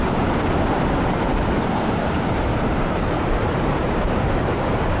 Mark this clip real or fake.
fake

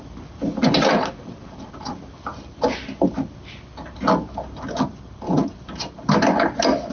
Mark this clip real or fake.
real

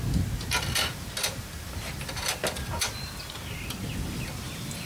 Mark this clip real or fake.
real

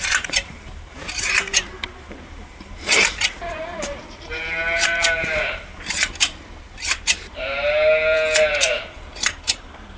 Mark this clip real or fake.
fake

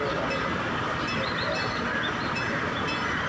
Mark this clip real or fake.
real